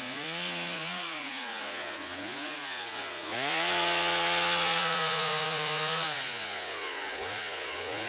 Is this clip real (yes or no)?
no